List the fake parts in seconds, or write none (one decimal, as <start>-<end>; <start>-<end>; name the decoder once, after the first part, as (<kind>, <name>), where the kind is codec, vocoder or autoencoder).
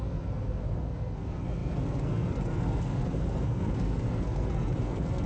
0.0-5.3 (codec, SNAC)